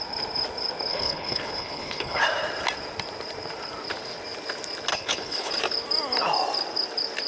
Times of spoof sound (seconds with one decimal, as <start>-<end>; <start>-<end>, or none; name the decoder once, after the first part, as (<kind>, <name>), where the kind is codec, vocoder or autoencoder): 0.9-2.2 (codec, HILCodec); 4.9-5.5